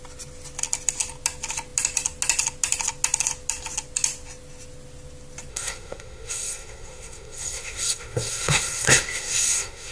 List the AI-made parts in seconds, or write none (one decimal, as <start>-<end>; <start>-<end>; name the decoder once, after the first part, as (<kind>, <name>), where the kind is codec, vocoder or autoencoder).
5.5-9.9 (codec, SNAC)